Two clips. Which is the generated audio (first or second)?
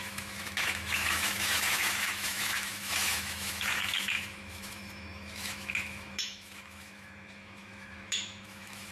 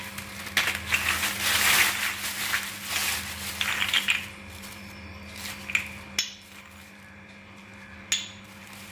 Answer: first